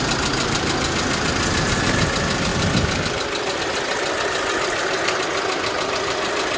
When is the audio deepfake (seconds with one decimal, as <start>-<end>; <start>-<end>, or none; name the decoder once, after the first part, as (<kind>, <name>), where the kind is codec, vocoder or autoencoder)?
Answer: none

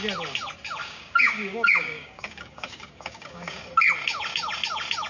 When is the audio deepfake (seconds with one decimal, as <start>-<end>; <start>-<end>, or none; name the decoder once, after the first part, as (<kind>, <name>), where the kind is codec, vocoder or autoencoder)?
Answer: 0.8-3.6 (codec, DAC)

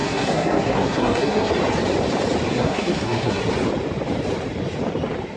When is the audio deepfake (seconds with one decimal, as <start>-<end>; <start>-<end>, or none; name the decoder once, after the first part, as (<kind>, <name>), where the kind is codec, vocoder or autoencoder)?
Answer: 0.0-1.5 (codec, SNAC); 2.5-3.4

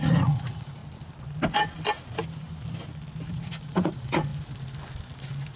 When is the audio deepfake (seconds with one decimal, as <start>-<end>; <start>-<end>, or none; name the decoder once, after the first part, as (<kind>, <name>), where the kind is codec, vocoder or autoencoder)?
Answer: 0.0-0.8 (vocoder, Vocos); 3.3-4.3

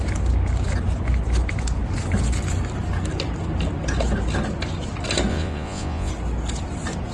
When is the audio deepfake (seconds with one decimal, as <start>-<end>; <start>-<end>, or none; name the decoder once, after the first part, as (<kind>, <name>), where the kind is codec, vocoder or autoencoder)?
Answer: 5.3-6.1 (vocoder, Vocos)

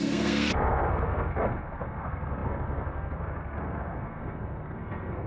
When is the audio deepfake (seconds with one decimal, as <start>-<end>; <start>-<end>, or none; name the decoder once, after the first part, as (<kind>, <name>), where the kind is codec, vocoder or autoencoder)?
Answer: 0.0-5.3 (codec, SNAC)